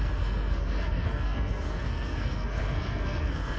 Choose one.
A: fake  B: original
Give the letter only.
A